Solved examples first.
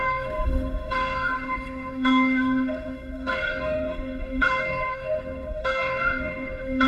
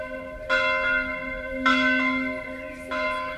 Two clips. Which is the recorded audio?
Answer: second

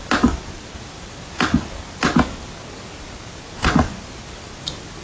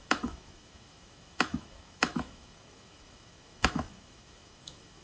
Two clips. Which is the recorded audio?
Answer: first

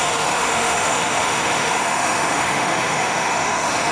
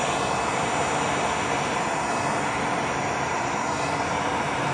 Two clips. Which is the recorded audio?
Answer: second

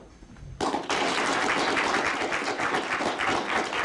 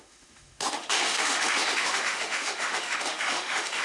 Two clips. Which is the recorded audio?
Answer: first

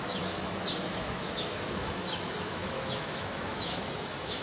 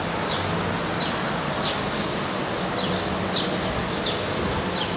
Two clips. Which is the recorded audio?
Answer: second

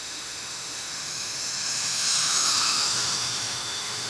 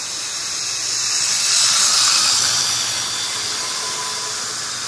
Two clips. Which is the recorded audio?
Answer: second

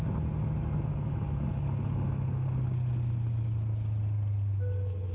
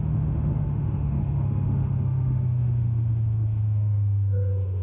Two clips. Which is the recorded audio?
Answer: first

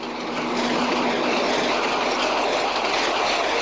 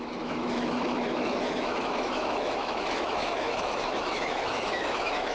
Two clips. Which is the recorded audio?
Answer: first